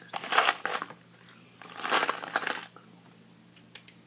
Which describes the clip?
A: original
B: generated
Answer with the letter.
A